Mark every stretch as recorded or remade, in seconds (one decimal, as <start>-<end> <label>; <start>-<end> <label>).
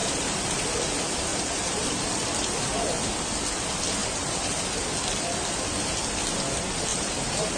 0.0-0.6 remade; 0.6-1.3 recorded; 1.3-2.3 remade; 2.3-4.0 recorded; 4.0-4.6 remade; 4.6-6.9 recorded; 6.9-7.6 remade